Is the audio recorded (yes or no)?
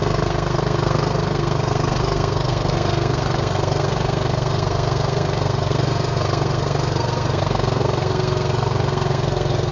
no